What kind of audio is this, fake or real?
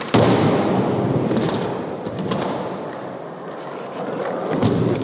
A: real